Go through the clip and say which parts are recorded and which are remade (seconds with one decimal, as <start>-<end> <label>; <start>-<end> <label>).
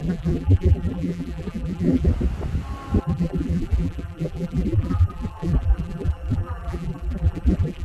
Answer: 0.0-2.1 remade; 2.1-3.0 recorded; 3.0-7.8 remade